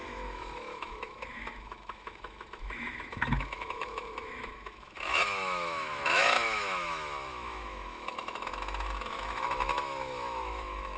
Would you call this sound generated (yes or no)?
yes